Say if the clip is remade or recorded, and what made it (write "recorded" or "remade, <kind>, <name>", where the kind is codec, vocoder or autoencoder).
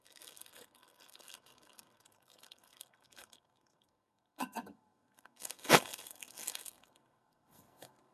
remade, codec, SNAC